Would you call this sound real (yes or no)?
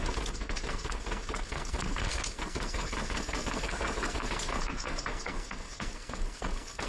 no